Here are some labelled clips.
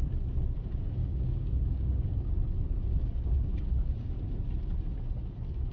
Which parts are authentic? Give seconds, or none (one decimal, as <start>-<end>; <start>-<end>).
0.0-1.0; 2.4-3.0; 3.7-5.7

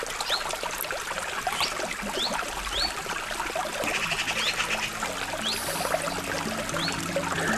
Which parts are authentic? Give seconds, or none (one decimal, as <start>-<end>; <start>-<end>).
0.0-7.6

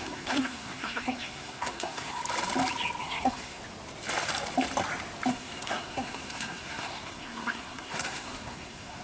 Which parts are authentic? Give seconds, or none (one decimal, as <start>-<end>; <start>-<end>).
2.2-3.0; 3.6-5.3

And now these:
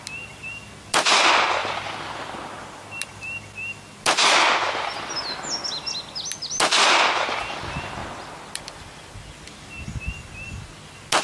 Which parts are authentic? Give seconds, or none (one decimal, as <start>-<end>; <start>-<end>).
0.0-11.2

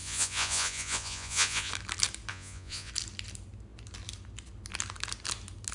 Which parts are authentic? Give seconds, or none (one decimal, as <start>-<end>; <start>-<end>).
1.7-2.3; 2.9-5.7

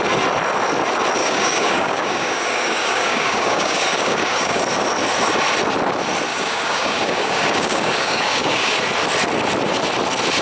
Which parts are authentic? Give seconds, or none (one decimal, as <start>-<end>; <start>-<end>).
0.0-1.2; 4.6-6.3; 8.8-10.4

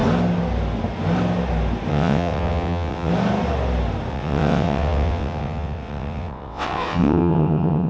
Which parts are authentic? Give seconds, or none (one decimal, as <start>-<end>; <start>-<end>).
0.0-1.9; 3.1-4.1

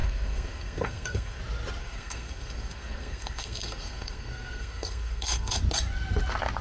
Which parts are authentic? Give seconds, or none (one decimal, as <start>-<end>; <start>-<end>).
1.4-1.8; 5.6-6.6